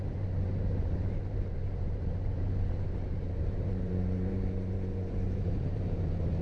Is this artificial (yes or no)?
yes